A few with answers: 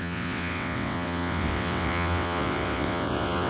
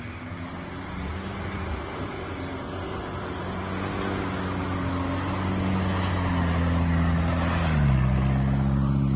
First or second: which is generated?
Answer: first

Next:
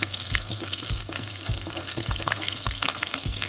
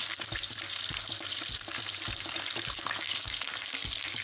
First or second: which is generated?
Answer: first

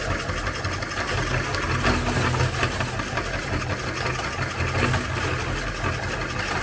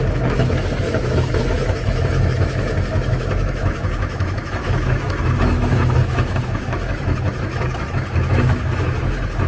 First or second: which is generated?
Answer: second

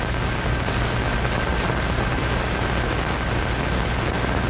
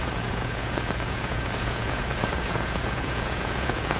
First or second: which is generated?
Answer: second